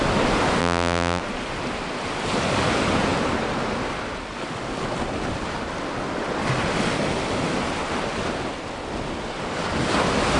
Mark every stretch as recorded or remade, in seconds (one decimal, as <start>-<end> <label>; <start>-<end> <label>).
0.0-0.6 recorded; 0.6-1.2 remade; 1.2-10.4 recorded